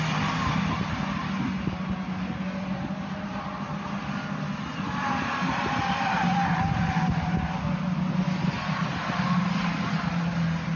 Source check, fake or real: real